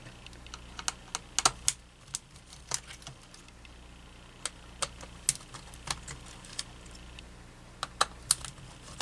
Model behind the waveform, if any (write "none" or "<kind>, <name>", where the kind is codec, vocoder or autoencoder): none